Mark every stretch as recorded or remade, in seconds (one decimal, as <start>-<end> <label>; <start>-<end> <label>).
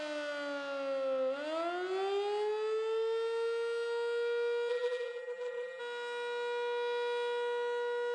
0.0-4.7 recorded; 4.7-5.8 remade; 5.8-8.1 recorded